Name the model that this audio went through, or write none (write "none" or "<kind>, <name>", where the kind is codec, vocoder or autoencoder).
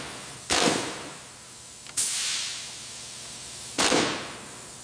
none